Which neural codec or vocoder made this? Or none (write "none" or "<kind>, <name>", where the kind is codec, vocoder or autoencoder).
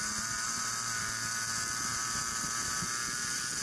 none